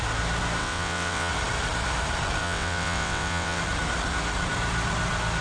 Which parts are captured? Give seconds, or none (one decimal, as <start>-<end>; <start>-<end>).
0.0-0.6; 1.3-2.4; 3.6-5.4